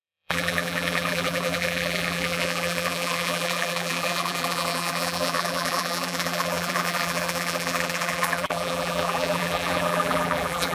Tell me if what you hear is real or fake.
fake